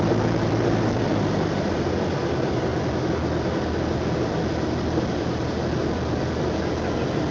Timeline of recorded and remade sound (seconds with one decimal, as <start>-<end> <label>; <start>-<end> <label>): 0.0-2.7 remade; 2.7-7.3 recorded